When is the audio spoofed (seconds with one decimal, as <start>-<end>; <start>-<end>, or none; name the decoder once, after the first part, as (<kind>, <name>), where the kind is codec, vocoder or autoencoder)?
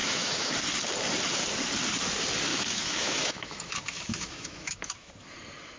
0.0-0.5 (autoencoder, DAC-VAE); 2.5-5.1